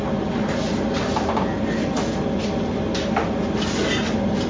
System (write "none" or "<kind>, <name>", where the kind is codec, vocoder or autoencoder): none